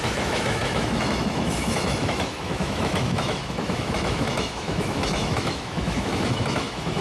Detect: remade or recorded remade